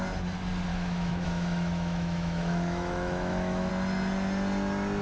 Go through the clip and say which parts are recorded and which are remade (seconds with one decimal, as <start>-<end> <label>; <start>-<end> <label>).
0.0-0.7 recorded; 0.7-3.7 remade; 3.7-5.0 recorded